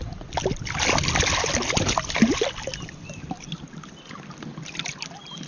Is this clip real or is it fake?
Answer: real